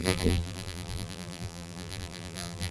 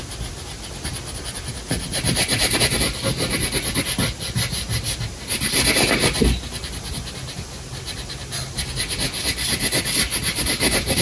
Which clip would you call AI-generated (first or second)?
first